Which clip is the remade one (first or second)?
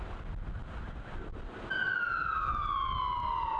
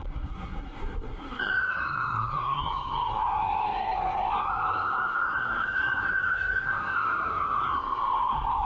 second